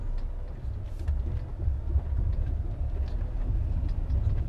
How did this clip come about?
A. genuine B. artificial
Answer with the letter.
A